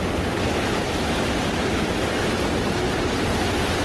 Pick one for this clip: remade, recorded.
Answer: recorded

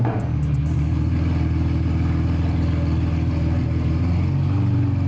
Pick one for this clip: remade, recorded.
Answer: recorded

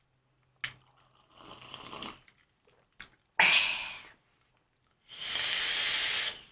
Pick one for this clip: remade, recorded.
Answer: recorded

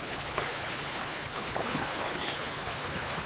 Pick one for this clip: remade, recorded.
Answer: remade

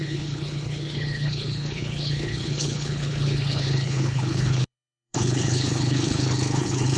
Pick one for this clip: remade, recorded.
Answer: remade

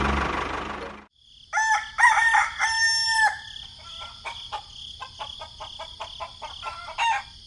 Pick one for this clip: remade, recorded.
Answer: recorded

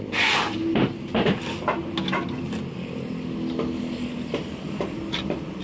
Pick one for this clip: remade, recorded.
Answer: recorded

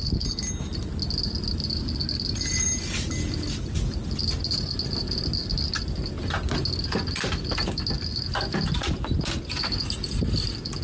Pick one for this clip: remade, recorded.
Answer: recorded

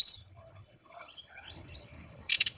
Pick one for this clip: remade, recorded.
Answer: remade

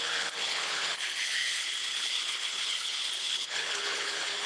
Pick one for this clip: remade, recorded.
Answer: remade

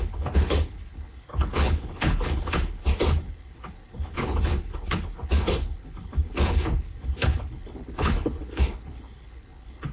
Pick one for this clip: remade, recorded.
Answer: remade